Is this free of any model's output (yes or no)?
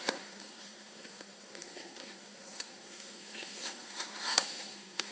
no